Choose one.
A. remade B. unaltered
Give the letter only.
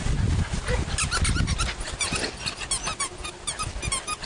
B